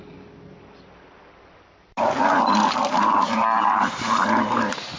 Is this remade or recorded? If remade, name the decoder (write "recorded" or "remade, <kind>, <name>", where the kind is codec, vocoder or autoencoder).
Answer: recorded